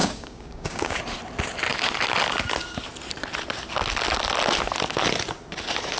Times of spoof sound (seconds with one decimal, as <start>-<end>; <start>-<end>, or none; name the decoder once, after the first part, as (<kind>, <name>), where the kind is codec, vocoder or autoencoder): 0.0-1.0 (codec, DAC)